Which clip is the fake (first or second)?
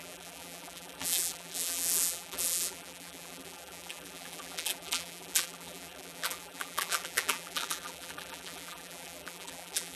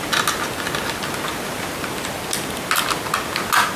first